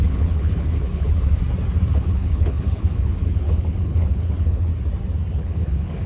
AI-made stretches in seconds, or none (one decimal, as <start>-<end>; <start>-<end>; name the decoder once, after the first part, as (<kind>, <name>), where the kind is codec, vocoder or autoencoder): 0.0-1.4 (codec, HILCodec); 1.9-4.7; 5.3-6.1